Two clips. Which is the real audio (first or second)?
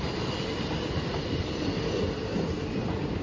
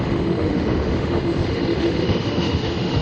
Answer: first